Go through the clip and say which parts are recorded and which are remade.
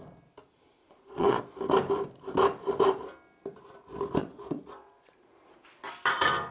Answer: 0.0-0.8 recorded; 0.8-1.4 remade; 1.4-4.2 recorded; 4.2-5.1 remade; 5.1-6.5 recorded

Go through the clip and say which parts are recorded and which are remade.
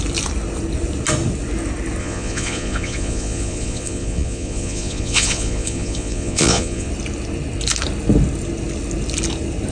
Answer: 0.0-2.0 recorded; 2.0-6.9 remade; 6.9-9.7 recorded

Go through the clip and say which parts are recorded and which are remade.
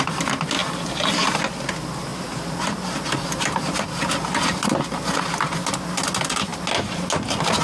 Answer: 0.0-0.6 recorded; 0.6-1.4 remade; 1.4-2.1 recorded; 2.1-5.2 remade; 5.2-7.6 recorded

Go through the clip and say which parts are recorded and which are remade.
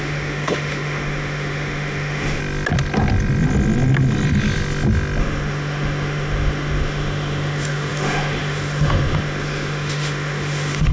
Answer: 0.0-2.4 remade; 2.4-5.2 recorded; 5.2-10.9 remade